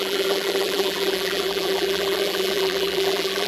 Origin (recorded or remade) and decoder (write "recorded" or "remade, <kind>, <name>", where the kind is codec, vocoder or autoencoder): remade, vocoder, BigVGAN v2